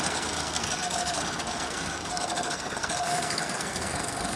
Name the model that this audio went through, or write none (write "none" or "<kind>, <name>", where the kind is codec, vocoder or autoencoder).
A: codec, SNAC